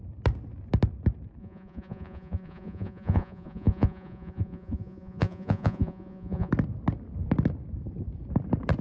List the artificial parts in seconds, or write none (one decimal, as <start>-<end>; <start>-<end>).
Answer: 1.4-6.5

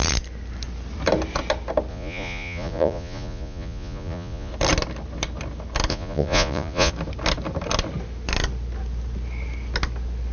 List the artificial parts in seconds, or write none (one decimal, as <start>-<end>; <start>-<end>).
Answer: 1.9-4.5; 5.9-6.9

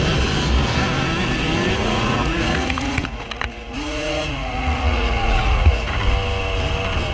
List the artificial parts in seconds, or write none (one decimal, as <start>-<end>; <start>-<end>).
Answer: 1.8-6.0

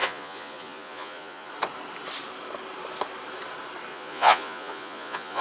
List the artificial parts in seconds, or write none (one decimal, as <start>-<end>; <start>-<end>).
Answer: 0.0-1.5; 3.9-5.4

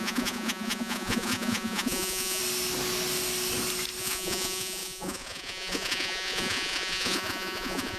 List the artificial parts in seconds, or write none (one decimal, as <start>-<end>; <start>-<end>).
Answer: 0.0-2.4; 4.0-8.0

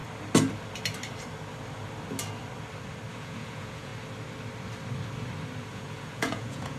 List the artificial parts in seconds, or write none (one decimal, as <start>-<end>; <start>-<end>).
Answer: 3.1-3.9; 5.7-6.8